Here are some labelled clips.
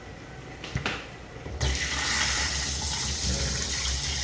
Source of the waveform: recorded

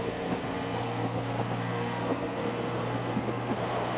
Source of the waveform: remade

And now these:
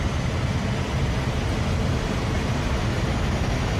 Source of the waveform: recorded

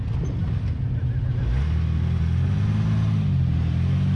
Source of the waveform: recorded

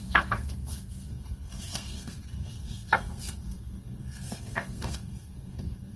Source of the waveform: remade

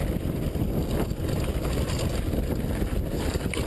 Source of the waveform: recorded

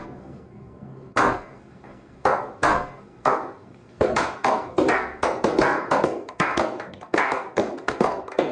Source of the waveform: remade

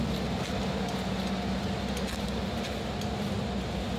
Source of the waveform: recorded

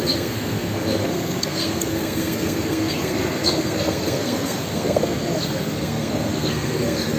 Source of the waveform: remade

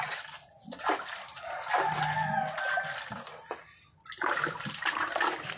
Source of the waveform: recorded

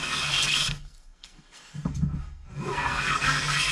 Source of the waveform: remade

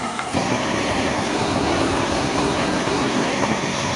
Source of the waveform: remade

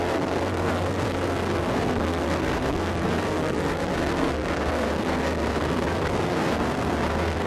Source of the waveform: remade